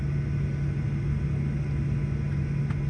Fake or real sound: real